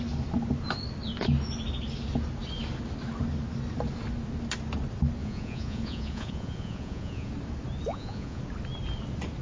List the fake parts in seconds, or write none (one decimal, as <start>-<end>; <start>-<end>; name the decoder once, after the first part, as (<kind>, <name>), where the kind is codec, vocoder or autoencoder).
5.2-7.3 (vocoder, Vocos); 7.9-8.4